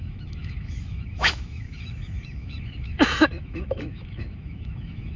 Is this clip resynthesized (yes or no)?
yes